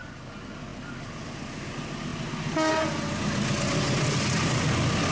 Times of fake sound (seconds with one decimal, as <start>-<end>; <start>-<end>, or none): none